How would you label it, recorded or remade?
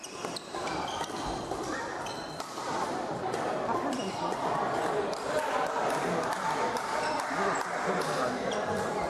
remade